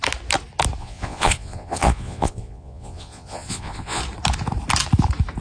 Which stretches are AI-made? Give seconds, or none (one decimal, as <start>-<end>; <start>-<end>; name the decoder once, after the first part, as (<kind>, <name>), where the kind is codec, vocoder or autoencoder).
0.8-4.0 (vocoder, Vocos)